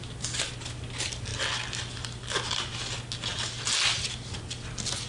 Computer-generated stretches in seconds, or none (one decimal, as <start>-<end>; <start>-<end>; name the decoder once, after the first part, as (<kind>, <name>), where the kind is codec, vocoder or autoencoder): none